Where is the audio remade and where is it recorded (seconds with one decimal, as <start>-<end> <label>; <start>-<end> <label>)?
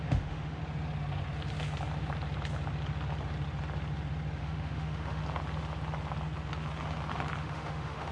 0.0-0.6 remade; 0.6-4.4 recorded; 4.4-5.2 remade; 5.2-7.4 recorded; 7.4-8.1 remade